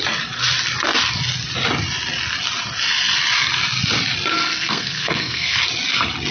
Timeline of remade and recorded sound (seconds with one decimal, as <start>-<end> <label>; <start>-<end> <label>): 0.0-4.3 recorded; 4.3-5.6 remade; 5.6-6.3 recorded